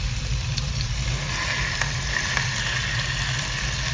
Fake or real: real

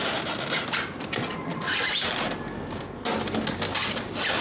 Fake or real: real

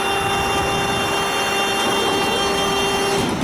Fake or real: real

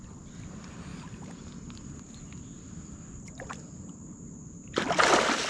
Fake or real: real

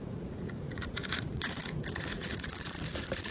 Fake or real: fake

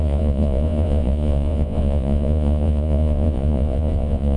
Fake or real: fake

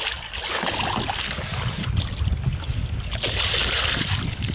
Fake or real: real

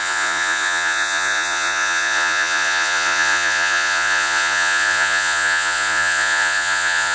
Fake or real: fake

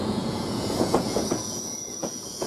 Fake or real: fake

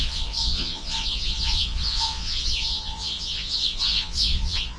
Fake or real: fake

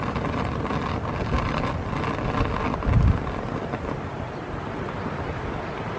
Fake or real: real